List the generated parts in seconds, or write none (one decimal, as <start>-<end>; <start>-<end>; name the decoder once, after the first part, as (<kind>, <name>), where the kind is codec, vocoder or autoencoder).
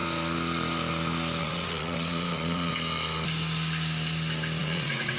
1.4-2.7 (vocoder, WaveNeXt); 4.6-5.2